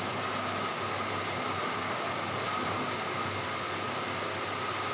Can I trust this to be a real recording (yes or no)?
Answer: yes